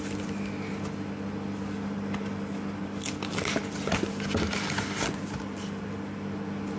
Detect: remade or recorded recorded